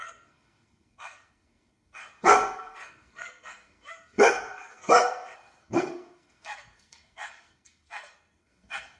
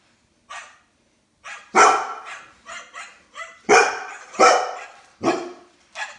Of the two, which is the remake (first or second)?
first